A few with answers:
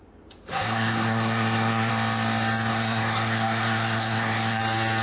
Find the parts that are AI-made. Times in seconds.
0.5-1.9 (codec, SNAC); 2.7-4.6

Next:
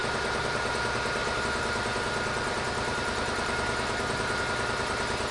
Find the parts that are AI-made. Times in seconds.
0.0-0.7 (vocoder, BigVGAN v2); 1.2-4.4

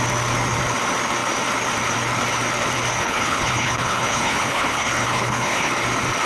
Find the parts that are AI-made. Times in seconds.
3.0-5.7 (codec, HILCodec)

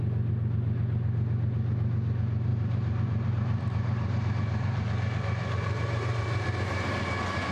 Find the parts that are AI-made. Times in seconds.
2.5-7.0 (vocoder, BigVGAN v2)

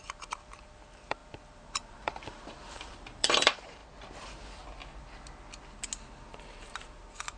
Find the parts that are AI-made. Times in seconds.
0.0-3.8 (vocoder, BigVGAN v2); 6.4-7.4

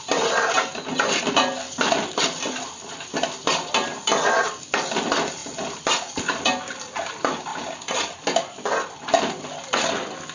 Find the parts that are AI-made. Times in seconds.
7.5-8.1 (vocoder, BigVGAN v2)

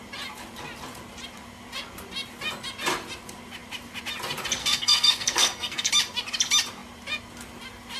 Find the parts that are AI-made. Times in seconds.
4.6-5.9 (codec, SNAC)